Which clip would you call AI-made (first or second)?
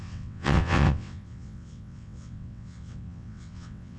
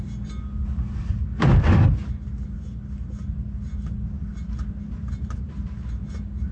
first